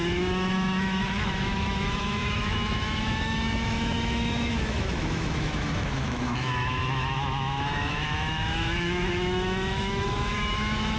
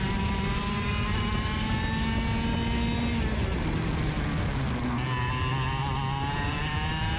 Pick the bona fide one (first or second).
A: second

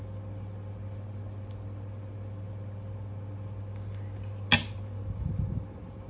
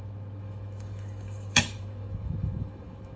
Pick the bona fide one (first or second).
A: first